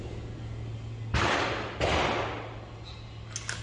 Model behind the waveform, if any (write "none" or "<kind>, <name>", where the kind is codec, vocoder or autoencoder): none